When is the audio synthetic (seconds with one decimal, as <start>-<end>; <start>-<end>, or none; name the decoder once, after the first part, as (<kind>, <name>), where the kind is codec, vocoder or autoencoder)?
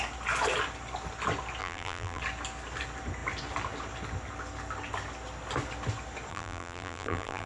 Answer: 1.6-2.2 (vocoder, BigVGAN v2); 6.3-7.5